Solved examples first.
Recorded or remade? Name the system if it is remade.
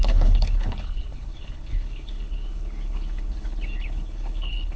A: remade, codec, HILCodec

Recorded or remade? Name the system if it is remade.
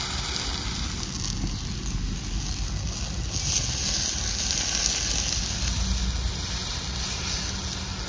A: recorded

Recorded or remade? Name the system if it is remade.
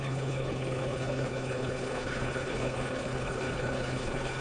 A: remade, codec, HILCodec